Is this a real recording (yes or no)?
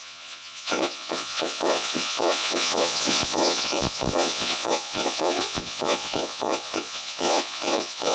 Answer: no